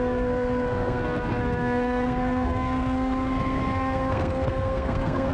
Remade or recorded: remade